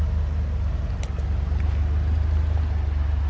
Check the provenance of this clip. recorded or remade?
recorded